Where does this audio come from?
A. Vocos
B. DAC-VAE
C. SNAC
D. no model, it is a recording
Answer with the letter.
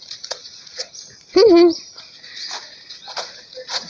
A